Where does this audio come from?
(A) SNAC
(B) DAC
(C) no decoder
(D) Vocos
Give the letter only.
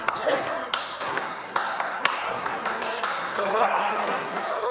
A